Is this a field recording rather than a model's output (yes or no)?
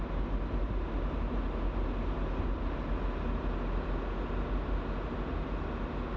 yes